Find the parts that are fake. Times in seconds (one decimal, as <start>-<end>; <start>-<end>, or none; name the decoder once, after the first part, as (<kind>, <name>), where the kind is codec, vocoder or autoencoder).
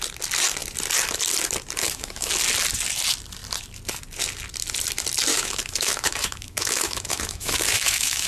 1.8-2.3 (autoencoder, DAC-VAE); 5.3-8.3